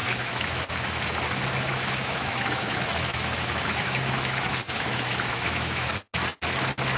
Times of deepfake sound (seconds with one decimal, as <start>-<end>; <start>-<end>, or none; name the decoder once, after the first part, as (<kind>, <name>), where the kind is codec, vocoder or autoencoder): 0.0-1.0 (autoencoder, DAC-VAE); 1.7-5.9